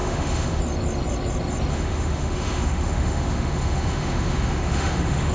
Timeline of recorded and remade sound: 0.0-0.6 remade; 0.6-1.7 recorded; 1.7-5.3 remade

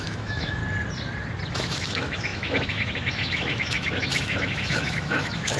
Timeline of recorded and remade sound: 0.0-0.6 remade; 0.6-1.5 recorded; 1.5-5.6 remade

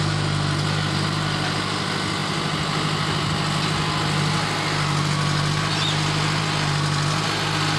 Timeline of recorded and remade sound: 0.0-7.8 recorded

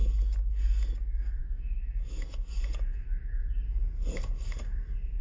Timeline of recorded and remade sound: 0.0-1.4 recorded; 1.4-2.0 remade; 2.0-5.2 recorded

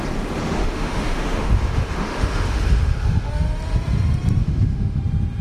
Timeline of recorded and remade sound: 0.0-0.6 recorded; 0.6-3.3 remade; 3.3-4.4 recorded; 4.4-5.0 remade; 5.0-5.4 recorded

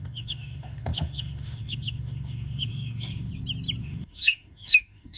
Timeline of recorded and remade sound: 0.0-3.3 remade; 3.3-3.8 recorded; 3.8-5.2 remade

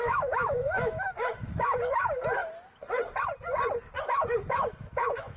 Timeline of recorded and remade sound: 0.0-2.4 remade; 2.4-4.0 recorded; 4.0-5.4 remade

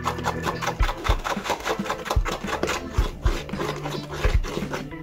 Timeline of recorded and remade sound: 0.0-1.0 recorded; 1.0-1.7 remade; 1.7-5.0 recorded